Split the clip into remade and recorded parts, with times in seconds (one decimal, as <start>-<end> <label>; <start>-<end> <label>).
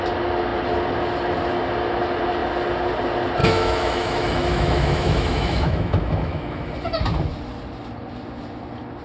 0.0-3.4 recorded; 3.4-6.7 remade; 6.7-9.0 recorded